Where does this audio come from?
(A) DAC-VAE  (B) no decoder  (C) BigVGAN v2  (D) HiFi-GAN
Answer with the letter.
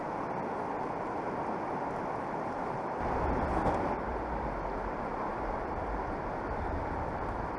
B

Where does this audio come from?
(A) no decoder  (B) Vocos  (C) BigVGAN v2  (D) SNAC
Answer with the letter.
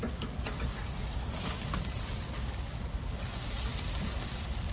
A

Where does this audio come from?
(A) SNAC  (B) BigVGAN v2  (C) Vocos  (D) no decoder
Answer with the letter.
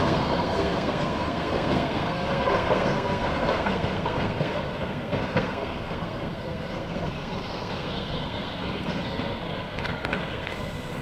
A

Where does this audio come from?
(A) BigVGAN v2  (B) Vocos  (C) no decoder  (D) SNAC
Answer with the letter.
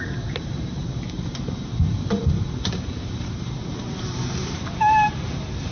A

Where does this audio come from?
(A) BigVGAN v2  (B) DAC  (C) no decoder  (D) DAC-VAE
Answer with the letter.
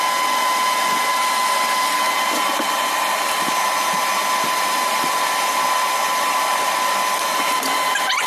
C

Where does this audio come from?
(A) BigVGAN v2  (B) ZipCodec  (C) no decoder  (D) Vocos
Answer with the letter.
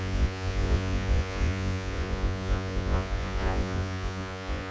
D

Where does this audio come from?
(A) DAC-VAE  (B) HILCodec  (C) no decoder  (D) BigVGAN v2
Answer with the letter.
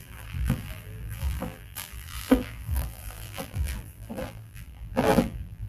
D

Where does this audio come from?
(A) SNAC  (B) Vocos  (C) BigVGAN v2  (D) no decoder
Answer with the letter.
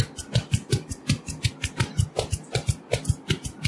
D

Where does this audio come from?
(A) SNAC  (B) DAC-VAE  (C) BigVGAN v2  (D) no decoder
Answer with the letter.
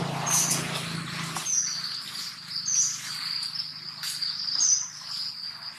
D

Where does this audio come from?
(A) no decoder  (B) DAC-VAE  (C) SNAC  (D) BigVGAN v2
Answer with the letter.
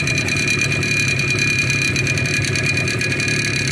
A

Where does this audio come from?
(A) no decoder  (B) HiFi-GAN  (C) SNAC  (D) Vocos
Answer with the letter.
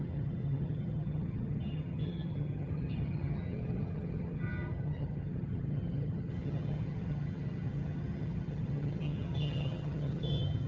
B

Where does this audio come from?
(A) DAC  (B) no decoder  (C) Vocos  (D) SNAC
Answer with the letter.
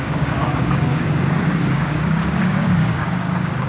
A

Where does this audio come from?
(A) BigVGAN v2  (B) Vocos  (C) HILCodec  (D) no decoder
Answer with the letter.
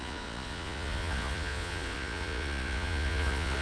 B